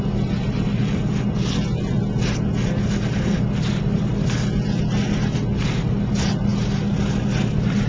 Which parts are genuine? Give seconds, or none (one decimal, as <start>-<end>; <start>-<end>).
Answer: 0.0-7.9